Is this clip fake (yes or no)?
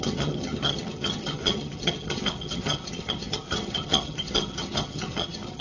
yes